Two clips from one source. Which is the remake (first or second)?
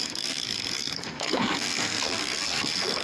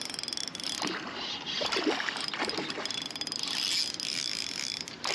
first